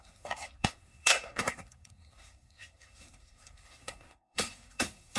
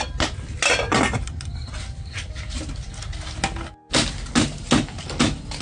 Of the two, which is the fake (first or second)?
first